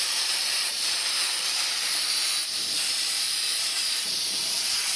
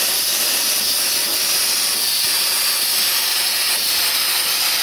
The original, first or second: second